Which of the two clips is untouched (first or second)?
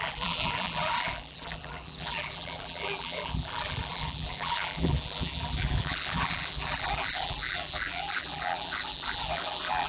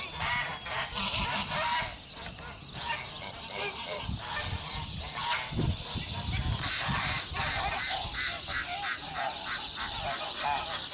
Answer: second